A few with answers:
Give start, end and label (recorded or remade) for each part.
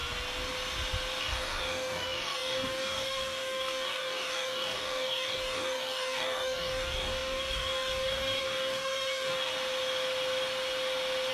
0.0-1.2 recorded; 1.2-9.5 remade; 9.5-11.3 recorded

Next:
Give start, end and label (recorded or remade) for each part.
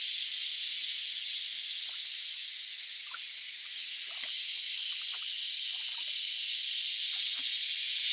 0.0-8.1 recorded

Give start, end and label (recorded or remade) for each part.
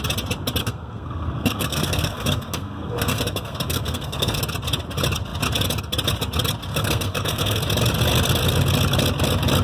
0.0-0.6 recorded; 0.6-4.4 remade; 4.4-6.7 recorded; 6.7-7.6 remade; 7.6-9.6 recorded